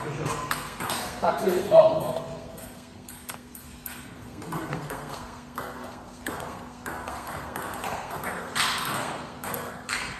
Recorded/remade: remade